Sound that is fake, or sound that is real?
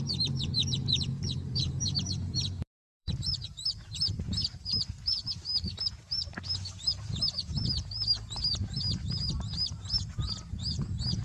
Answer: fake